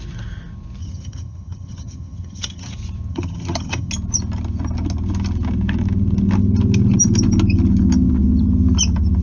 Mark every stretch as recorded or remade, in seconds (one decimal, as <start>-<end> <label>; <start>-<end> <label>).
0.0-0.8 recorded; 0.8-2.7 remade; 2.7-3.1 recorded; 3.1-3.9 remade; 3.9-9.2 recorded